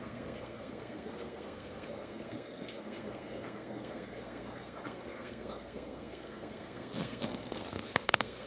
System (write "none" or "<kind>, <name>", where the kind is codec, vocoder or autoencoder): codec, SNAC